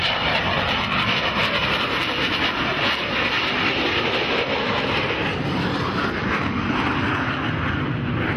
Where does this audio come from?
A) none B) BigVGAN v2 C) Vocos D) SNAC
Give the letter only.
A